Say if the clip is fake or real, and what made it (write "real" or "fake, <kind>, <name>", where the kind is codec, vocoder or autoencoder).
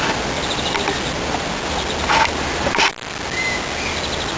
real